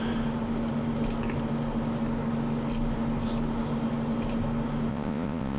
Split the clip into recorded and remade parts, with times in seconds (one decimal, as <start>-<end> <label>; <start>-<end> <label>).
0.0-4.9 recorded; 4.9-5.6 remade